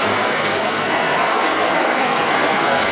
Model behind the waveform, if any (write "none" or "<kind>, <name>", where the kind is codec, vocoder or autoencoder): codec, SNAC